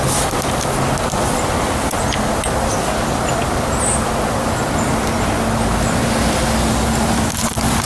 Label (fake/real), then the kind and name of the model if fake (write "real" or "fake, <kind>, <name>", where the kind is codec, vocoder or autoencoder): real